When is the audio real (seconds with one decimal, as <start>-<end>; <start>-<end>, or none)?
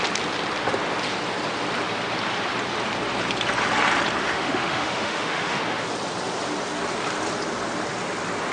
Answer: 0.0-4.2; 5.6-8.5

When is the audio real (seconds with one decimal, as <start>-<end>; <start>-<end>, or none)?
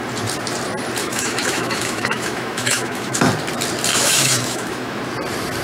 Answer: 0.0-1.0; 3.2-3.9; 5.0-5.6